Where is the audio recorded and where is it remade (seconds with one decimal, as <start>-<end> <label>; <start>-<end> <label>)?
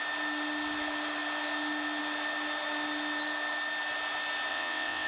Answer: 0.0-4.5 recorded; 4.5-5.1 remade